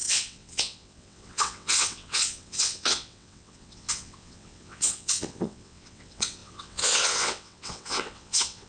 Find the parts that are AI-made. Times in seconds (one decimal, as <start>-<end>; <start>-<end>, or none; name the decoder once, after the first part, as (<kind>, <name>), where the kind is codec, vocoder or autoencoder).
0.0-8.7 (vocoder, WaveNeXt)